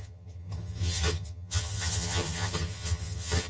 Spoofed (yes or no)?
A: yes